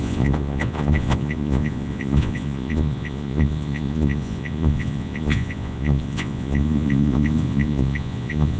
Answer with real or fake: fake